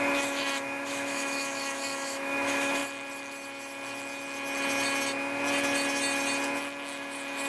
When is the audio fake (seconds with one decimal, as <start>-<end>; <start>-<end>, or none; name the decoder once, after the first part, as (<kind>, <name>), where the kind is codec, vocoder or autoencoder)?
0.0-2.8 (autoencoder, DAC-VAE)